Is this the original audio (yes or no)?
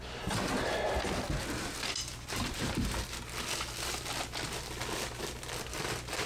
yes